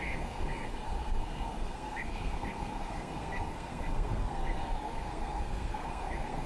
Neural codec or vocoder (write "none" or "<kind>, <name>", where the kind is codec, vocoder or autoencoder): codec, SNAC